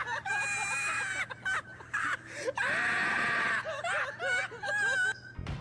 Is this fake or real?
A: real